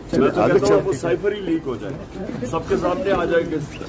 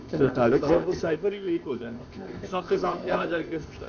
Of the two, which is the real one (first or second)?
first